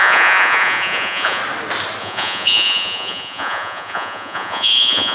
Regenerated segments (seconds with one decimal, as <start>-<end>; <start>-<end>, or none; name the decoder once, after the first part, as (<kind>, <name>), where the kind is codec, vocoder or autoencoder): 0.0-1.4 (vocoder, Vocos); 2.0-5.1

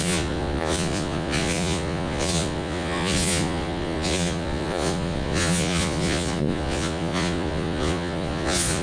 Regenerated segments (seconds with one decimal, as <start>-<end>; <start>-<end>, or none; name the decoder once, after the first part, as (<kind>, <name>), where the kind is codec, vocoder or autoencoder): 0.0-8.8 (vocoder, Vocos)

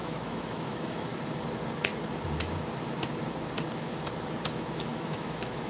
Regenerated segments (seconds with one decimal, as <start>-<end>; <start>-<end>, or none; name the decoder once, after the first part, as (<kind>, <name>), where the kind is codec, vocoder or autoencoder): 0.0-1.1 (autoencoder, DAC-VAE); 4.5-5.7

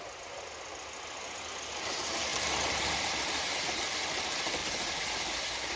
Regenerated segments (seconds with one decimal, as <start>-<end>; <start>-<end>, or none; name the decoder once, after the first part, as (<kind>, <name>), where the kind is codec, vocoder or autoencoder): 2.3-3.8 (vocoder, BigVGAN v2); 4.6-5.2

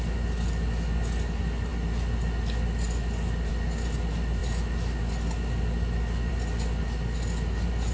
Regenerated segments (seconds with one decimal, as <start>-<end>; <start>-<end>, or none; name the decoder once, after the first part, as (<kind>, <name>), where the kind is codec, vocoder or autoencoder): none

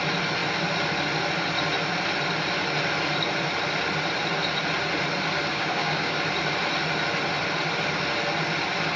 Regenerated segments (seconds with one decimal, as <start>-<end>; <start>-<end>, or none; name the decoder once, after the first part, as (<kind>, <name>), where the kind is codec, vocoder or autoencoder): 5.5-6.2 (codec, DAC)

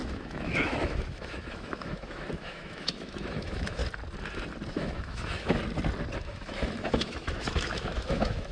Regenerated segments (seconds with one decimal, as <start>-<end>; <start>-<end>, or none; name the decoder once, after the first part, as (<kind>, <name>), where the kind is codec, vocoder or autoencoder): 0.0-3.8 (autoencoder, DAC-VAE); 4.7-5.6; 6.2-8.5

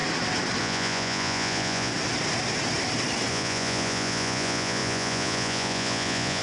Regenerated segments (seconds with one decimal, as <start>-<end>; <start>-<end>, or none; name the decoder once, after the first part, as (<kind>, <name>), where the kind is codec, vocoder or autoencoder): 0.6-1.9 (vocoder, Vocos); 3.3-6.4